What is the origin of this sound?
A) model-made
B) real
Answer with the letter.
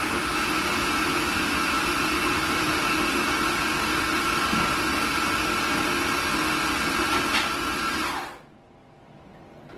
B